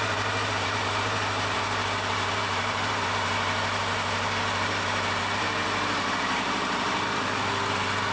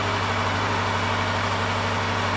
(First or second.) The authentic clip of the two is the second